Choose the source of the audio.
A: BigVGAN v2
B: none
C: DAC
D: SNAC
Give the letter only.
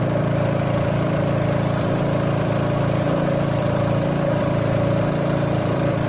A